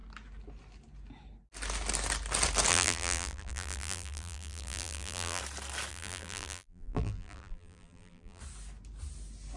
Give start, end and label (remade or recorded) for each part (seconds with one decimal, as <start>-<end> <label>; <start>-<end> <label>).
0.0-2.7 recorded; 2.7-5.4 remade; 5.4-5.9 recorded; 5.9-8.4 remade; 8.4-9.6 recorded